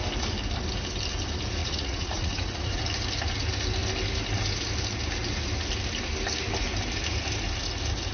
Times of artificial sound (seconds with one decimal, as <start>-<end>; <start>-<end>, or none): 1.6-2.8